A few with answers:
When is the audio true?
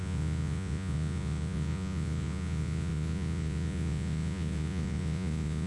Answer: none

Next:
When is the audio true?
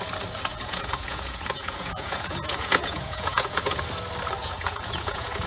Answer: 0.0-0.5; 3.8-4.4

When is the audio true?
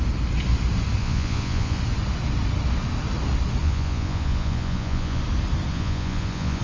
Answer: 0.0-1.0; 1.8-3.6; 5.2-5.7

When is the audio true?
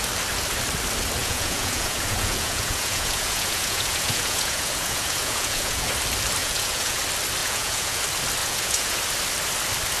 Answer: 0.0-1.2; 5.9-6.4; 7.0-7.4; 8.0-8.4; 9.0-10.0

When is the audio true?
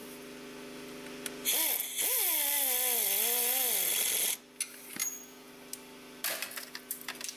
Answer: 0.0-5.0; 5.5-7.4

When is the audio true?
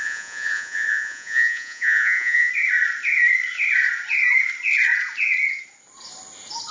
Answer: 2.5-6.7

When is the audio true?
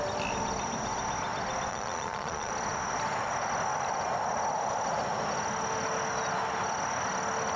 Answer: 0.0-1.7; 2.5-7.6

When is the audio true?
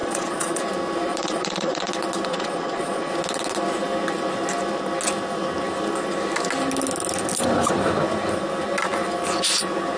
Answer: 0.6-1.1; 1.9-2.3; 3.1-10.0